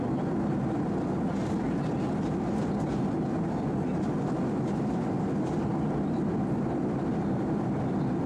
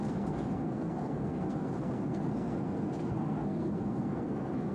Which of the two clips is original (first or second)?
first